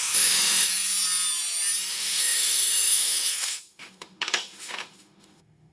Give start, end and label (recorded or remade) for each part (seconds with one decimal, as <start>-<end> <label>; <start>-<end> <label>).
0.0-0.7 remade; 0.7-1.9 recorded; 1.9-5.7 remade